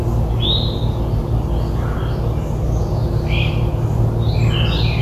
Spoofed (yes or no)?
no